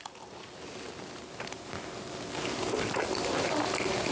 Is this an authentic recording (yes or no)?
yes